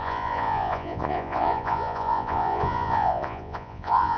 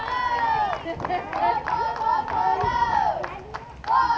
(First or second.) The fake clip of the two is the first